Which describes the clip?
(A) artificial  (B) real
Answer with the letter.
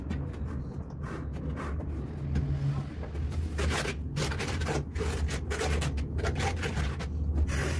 B